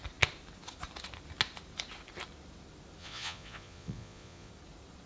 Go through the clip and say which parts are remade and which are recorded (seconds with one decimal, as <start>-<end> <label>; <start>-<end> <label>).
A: 0.0-3.0 recorded; 3.0-4.5 remade; 4.5-5.1 recorded